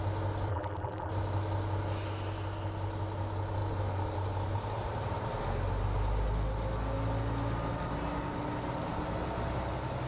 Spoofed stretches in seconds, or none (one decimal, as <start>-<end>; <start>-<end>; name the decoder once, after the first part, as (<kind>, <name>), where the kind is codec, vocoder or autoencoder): 0.5-1.1 (vocoder, BigVGAN v2)